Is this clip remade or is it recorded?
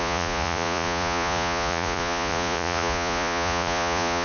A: remade